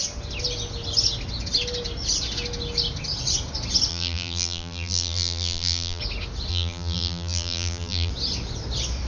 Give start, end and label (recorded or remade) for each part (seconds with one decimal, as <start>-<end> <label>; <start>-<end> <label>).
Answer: 0.0-3.9 recorded; 3.9-6.0 remade; 6.0-6.5 recorded; 6.5-8.1 remade; 8.1-9.1 recorded